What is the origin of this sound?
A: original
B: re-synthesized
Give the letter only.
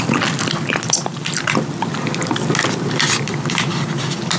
A